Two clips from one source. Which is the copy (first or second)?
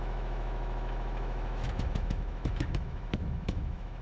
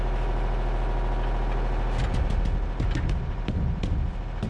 first